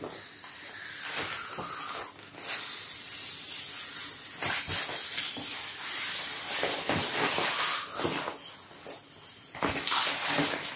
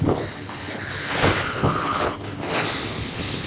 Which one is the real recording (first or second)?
first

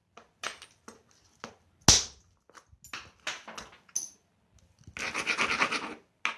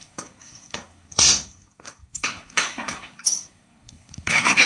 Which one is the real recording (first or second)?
first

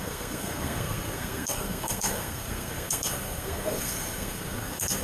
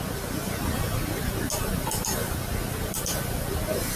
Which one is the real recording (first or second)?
second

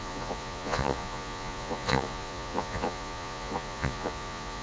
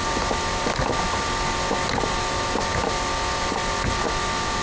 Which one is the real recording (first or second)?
second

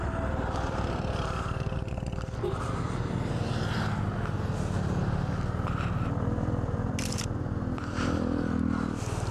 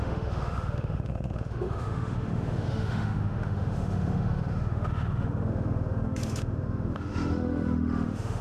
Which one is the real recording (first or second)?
first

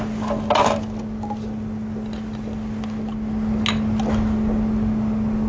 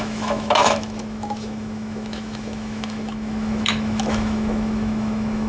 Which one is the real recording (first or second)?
first